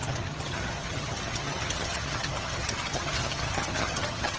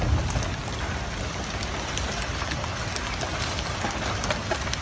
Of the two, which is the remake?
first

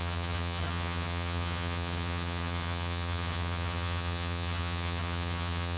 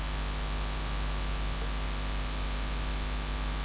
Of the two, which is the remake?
first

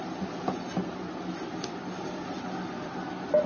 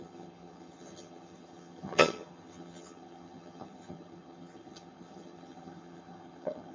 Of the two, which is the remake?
second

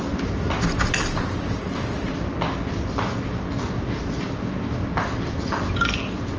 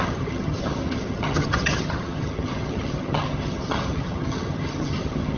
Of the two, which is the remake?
second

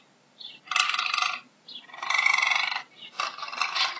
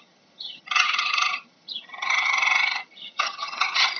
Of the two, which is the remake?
second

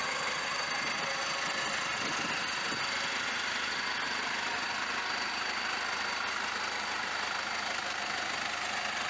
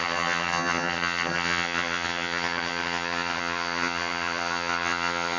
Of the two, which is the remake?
second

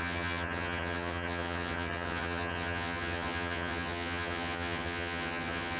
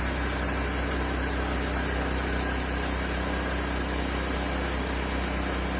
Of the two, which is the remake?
first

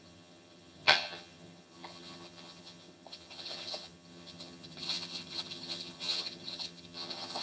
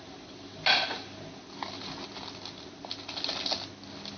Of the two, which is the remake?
first